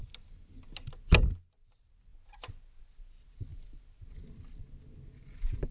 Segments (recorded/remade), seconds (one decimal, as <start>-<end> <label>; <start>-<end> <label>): 0.0-5.7 recorded